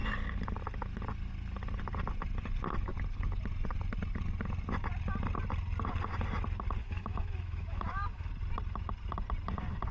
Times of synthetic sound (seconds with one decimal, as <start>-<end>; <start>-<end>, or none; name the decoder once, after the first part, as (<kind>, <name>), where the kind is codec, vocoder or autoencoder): 6.8-8.3 (autoencoder, DAC-VAE)